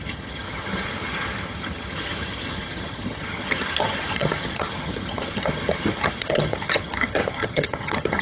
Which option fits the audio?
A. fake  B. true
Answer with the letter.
A